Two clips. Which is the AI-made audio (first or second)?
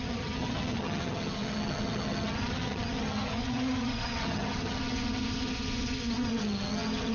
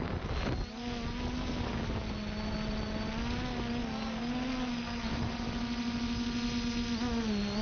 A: first